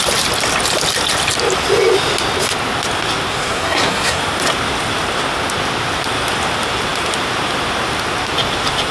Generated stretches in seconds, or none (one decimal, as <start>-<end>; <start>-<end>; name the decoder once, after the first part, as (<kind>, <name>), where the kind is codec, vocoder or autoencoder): 3.3-4.2 (codec, SNAC)